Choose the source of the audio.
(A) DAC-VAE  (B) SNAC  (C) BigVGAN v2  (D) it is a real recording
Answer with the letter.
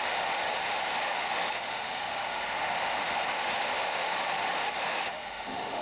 A